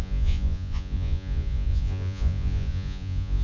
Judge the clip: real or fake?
fake